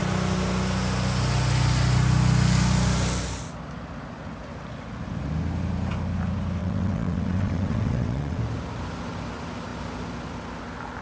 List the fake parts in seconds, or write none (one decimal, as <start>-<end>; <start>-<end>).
6.6-8.4